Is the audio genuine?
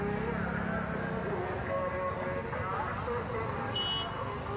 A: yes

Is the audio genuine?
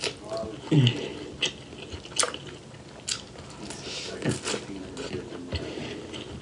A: yes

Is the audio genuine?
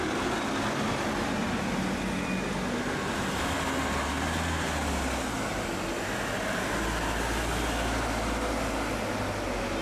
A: yes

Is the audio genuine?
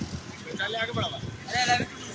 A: yes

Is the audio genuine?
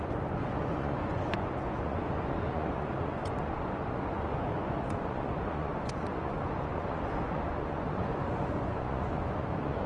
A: no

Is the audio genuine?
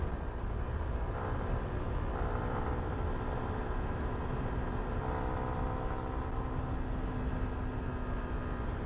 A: yes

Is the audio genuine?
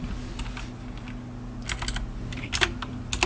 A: yes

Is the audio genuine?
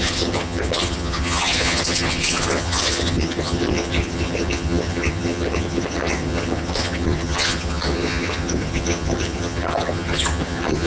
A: no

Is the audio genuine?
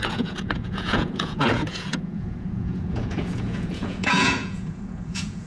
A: no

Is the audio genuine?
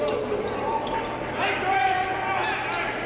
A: yes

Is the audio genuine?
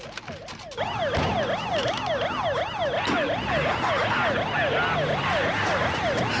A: yes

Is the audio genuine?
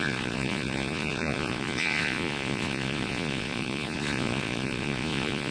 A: no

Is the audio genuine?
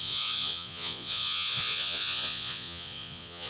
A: no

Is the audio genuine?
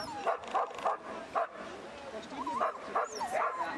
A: yes